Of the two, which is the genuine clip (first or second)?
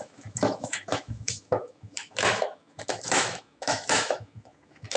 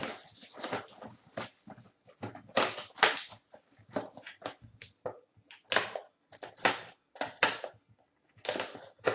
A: second